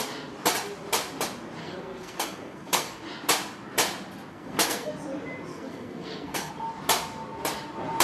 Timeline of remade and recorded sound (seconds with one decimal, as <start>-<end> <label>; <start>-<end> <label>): 0.0-1.6 recorded; 1.6-3.0 remade; 3.0-4.3 recorded; 4.3-4.9 remade; 4.9-5.5 recorded; 5.5-6.5 remade; 6.5-8.0 recorded